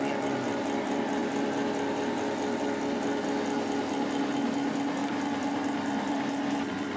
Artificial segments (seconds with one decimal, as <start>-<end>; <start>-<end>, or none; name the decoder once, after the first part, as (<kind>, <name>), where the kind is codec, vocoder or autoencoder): 5.0-7.0 (vocoder, BigVGAN v2)